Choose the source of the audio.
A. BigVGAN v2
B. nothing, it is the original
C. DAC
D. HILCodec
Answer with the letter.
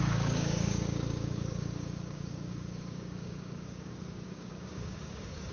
C